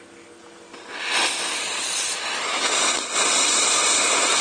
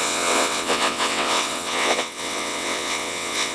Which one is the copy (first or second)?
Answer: second